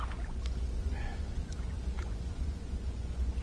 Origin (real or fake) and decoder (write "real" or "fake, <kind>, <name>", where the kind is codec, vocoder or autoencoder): fake, vocoder, Vocos